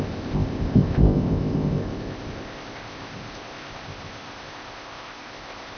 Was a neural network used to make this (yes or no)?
yes